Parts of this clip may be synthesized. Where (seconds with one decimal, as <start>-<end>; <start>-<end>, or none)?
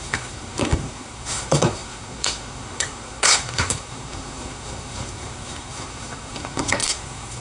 0.0-7.4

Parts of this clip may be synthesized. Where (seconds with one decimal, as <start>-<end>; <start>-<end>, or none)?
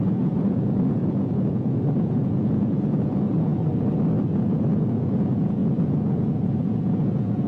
0.0-3.5; 4.3-7.5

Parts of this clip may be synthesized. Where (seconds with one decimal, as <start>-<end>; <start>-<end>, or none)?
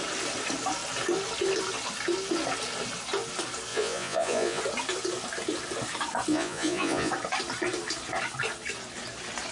3.7-4.6; 6.3-7.1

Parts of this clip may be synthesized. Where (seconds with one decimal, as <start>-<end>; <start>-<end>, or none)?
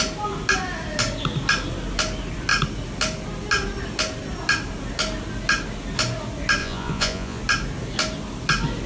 6.6-7.4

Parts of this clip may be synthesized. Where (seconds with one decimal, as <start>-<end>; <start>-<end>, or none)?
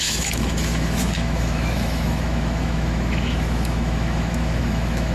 0.0-5.1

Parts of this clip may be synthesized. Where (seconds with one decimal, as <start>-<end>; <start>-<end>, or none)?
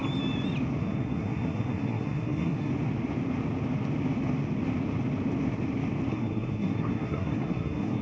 0.8-2.7; 6.1-8.0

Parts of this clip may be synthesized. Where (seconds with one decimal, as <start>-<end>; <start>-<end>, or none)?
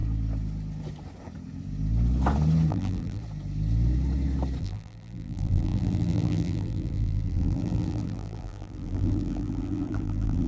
2.7-3.2; 4.6-10.5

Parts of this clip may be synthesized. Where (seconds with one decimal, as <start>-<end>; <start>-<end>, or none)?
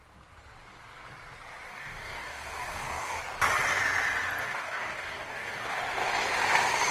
1.7-3.2; 4.4-5.8